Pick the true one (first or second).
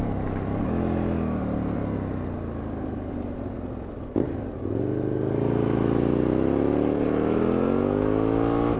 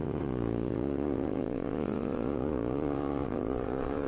first